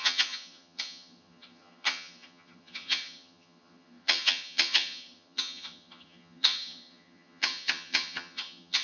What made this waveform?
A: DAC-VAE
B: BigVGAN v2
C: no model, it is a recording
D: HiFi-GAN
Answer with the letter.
D